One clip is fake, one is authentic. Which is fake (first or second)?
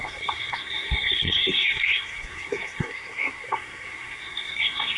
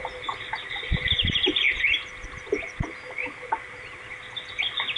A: first